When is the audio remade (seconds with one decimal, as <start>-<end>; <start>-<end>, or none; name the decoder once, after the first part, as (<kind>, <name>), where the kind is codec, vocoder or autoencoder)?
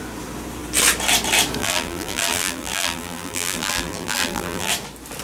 1.6-4.7 (vocoder, BigVGAN v2)